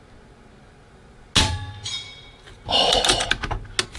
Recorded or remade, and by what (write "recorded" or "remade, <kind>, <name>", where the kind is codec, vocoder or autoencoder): recorded